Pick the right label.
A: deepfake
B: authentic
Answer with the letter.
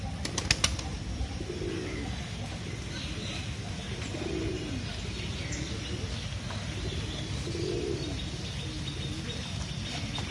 B